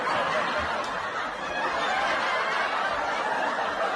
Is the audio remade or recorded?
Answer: recorded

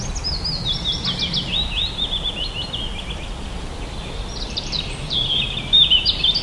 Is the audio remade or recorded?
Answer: recorded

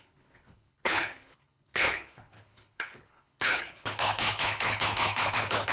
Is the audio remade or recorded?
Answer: remade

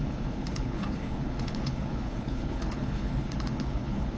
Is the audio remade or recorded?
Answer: remade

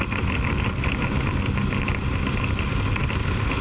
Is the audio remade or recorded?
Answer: recorded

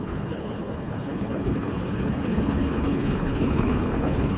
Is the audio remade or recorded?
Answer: remade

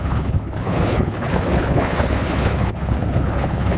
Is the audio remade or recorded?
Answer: remade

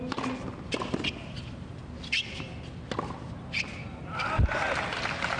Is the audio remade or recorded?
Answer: recorded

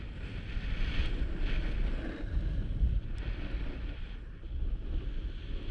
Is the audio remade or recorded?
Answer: recorded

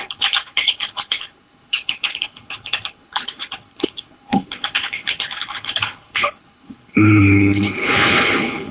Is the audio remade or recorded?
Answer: remade